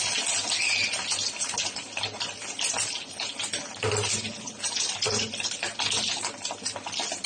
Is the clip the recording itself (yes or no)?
yes